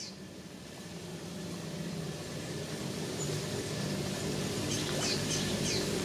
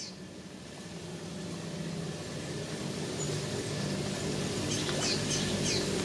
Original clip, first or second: second